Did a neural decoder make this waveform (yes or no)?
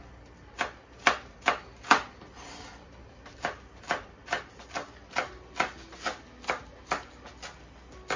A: no